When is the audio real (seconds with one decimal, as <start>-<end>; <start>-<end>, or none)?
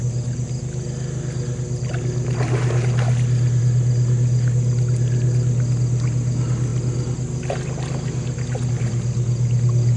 0.0-10.0